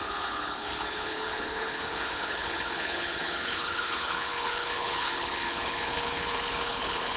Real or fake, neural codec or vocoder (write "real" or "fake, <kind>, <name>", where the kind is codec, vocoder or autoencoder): fake, codec, HILCodec